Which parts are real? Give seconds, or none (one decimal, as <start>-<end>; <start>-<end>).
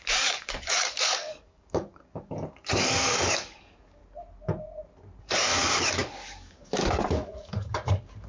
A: 4.0-5.2